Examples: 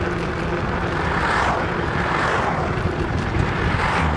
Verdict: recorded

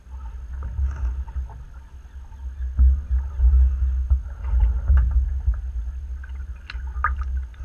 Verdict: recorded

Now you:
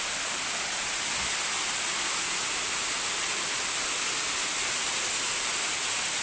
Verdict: recorded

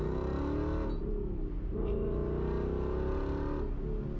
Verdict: recorded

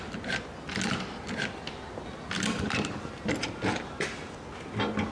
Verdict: recorded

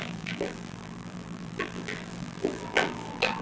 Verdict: remade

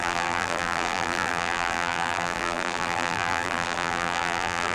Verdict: remade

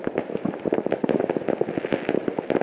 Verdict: recorded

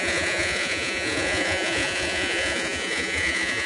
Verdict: remade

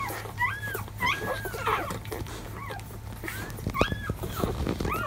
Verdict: recorded